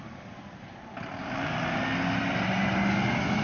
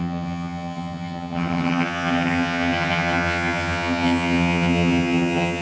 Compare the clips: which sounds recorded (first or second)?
first